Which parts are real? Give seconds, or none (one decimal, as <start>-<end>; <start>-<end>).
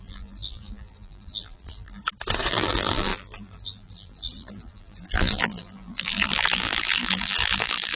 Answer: 2.0-2.5